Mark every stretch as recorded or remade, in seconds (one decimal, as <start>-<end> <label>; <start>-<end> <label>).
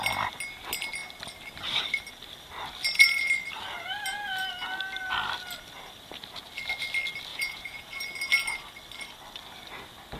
0.0-7.3 recorded; 7.3-8.0 remade; 8.0-10.2 recorded